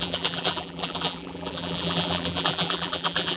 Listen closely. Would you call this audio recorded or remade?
remade